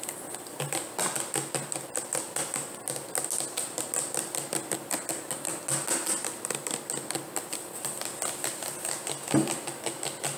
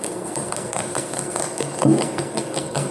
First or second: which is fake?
second